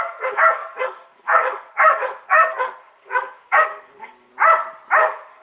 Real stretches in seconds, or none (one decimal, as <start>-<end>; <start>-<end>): 4.3-5.0